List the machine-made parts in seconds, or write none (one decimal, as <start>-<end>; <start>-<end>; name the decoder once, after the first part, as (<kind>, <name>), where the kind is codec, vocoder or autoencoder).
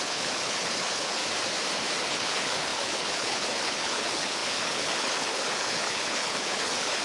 0.0-1.2 (codec, HILCodec); 2.0-7.0